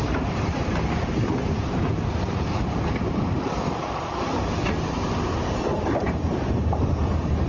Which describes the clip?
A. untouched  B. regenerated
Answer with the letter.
B